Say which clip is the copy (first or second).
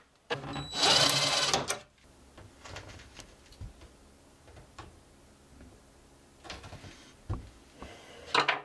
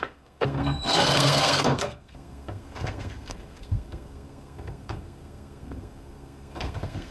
second